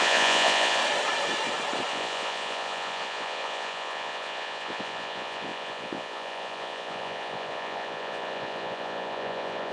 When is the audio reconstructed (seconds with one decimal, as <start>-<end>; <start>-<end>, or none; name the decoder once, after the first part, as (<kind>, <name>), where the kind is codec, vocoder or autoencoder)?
0.0-0.8 (vocoder, Vocos); 1.9-9.7

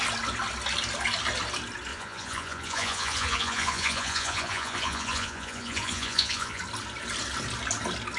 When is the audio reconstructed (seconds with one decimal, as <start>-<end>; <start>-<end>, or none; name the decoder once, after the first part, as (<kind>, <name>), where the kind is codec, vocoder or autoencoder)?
1.9-6.6 (vocoder, Vocos)

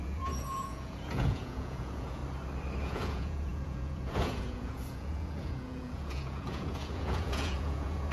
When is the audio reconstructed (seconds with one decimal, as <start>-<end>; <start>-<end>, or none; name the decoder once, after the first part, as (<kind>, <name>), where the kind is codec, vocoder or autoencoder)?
0.0-2.2 (vocoder, Vocos); 2.8-8.1

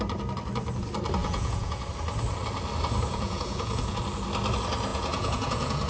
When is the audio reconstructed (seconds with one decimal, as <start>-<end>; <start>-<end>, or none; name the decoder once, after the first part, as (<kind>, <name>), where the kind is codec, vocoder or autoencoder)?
1.2-1.8 (vocoder, Vocos); 3.1-4.0; 4.9-5.9

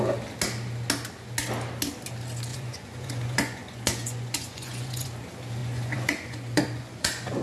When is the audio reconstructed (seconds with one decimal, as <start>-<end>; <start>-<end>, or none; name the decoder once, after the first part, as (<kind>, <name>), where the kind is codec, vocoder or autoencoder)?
2.5-5.1 (vocoder, Vocos); 5.6-7.4

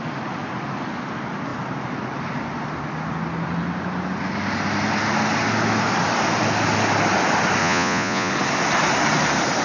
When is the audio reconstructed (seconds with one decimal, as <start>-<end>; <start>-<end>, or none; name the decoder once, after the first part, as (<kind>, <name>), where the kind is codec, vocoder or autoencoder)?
7.6-8.3 (vocoder, Vocos)

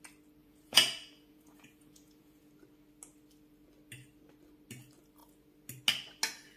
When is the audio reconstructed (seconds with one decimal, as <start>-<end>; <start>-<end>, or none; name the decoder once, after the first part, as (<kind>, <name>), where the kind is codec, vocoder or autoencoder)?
0.4-2.5 (vocoder, Vocos)